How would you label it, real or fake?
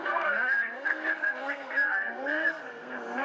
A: fake